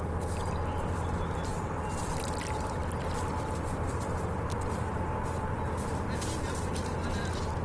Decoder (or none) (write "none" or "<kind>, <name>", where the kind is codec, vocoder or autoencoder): none